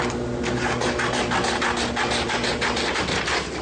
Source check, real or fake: real